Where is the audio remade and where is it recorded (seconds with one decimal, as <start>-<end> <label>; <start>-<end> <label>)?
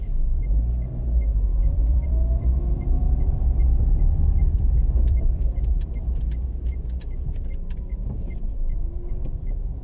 0.0-1.5 recorded; 1.5-6.2 remade; 6.2-8.0 recorded; 8.0-9.1 remade; 9.1-9.8 recorded